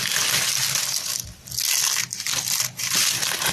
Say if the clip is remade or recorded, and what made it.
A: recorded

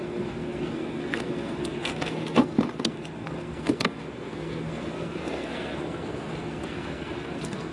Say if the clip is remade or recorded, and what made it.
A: remade, codec, SNAC